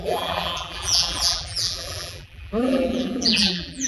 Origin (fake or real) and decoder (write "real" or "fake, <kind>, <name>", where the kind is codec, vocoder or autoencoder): fake, vocoder, BigVGAN v2